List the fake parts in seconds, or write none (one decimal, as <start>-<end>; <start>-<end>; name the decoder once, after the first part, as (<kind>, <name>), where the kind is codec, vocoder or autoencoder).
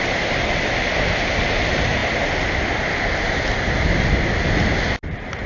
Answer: none